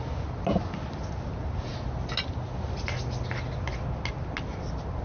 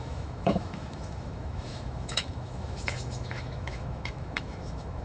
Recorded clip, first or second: first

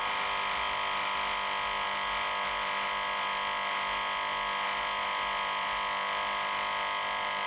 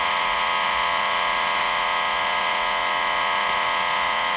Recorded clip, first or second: first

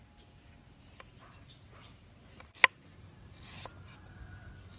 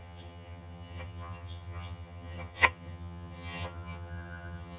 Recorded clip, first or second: first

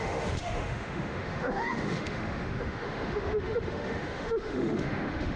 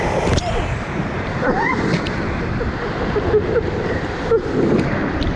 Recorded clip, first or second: second